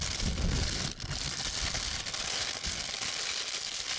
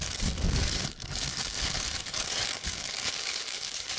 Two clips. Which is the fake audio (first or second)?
second